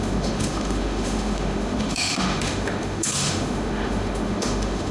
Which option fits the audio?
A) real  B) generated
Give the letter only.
B